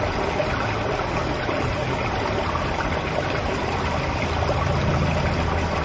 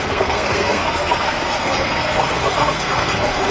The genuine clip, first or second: first